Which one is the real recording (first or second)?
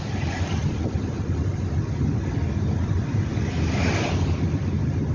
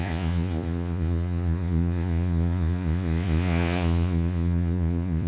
first